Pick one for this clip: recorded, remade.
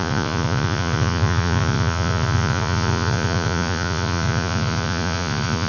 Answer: remade